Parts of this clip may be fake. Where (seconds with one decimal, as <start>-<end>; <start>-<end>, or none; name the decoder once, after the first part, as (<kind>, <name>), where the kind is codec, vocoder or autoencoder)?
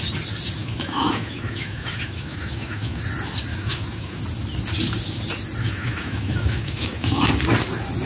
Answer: 0.6-3.0 (autoencoder, DAC-VAE); 3.5-4.2; 5.6-7.2